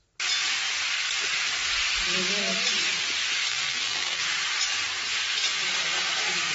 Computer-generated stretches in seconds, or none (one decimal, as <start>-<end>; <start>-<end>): 3.5-4.2